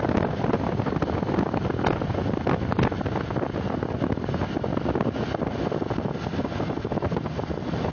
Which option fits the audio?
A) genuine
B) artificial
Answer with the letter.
A